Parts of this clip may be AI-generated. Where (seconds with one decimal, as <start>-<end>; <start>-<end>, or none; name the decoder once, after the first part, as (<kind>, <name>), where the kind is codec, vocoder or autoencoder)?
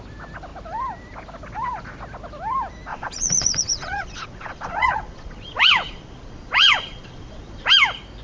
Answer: 2.9-7.7 (vocoder, Vocos)